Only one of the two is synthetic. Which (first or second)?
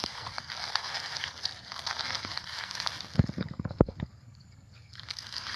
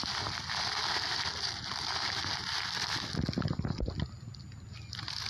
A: first